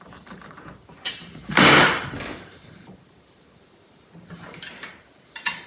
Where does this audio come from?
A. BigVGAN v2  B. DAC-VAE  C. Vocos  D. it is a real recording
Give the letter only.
A